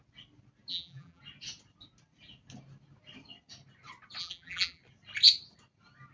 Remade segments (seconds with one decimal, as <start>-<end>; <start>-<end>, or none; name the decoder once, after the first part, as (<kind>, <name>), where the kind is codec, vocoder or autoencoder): 0.7-1.2 (vocoder, BigVGAN v2); 4.2-4.8